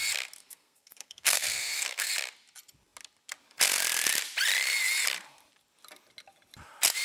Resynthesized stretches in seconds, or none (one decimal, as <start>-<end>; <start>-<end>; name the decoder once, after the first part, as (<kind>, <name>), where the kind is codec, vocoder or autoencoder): 0.4-2.1 (codec, SNAC)